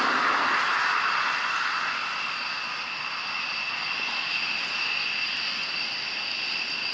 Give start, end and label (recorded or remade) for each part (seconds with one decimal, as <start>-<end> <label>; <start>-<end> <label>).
0.0-6.9 recorded

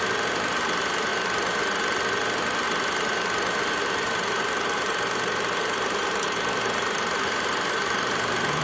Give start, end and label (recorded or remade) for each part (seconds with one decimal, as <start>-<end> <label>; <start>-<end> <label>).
0.0-1.1 remade; 1.1-3.7 recorded; 3.7-8.6 remade

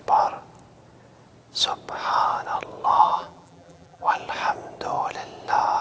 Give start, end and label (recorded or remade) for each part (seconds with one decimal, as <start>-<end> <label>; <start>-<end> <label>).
0.0-3.0 recorded; 3.0-4.2 remade; 4.2-5.8 recorded